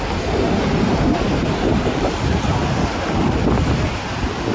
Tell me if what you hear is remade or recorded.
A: recorded